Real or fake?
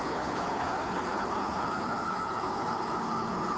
fake